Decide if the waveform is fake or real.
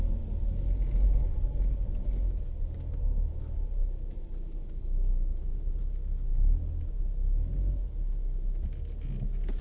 real